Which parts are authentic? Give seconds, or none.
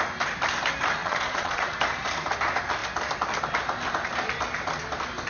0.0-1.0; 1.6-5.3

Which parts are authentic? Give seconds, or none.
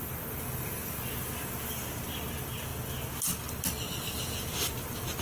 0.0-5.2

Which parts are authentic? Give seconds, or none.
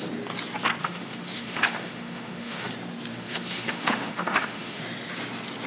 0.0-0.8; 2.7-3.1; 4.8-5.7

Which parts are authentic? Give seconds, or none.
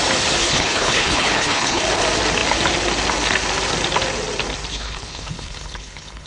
0.0-0.4; 1.8-4.7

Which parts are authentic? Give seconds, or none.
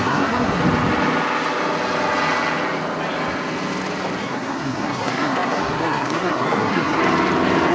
0.6-4.2; 7.0-7.7